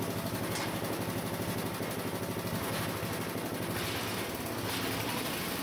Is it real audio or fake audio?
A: real